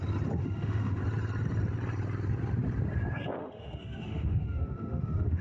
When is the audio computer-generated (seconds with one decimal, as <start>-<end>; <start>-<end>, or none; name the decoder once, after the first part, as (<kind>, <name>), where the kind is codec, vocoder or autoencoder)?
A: 0.4-1.0 (autoencoder, DAC-VAE); 3.4-5.4